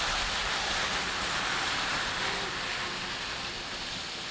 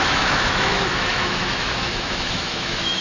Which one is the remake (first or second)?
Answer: second